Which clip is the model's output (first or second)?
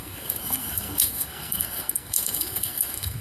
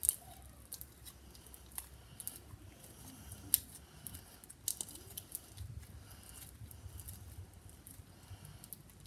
first